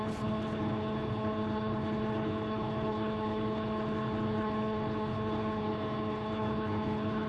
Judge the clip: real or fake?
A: fake